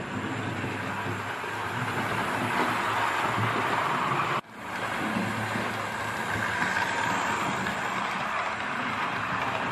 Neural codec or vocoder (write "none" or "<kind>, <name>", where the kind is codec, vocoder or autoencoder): none